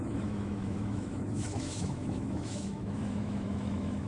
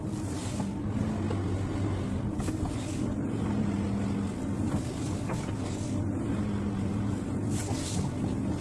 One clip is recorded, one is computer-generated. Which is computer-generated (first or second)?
first